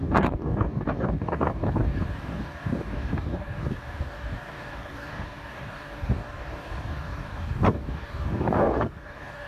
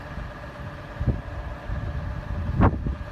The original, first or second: second